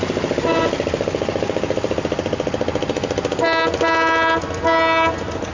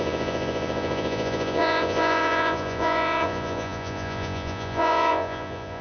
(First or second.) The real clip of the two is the first